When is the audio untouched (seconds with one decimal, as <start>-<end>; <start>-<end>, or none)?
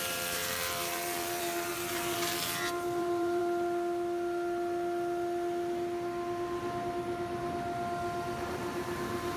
3.4-8.5